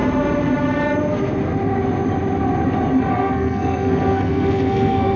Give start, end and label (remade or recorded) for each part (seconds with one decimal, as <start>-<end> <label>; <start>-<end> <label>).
0.0-3.1 recorded; 3.1-5.2 remade